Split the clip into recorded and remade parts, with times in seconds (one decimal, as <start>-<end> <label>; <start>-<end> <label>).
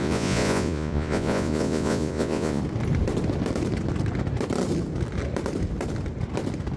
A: 0.0-2.6 remade; 2.6-6.8 recorded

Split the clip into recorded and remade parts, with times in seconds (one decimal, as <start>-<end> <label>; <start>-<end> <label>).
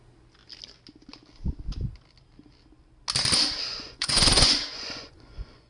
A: 0.0-3.7 recorded; 3.7-5.7 remade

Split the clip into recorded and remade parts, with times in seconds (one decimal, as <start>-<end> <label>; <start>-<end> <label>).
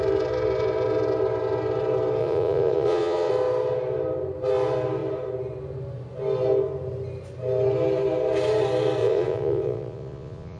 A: 0.0-2.2 recorded; 2.2-3.3 remade; 3.3-9.0 recorded; 9.0-10.6 remade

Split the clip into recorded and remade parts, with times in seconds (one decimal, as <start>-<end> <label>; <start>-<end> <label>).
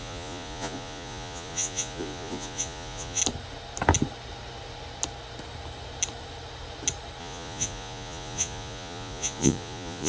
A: 0.0-3.2 remade; 3.2-7.2 recorded; 7.2-10.1 remade